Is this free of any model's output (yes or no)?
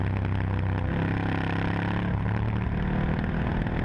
yes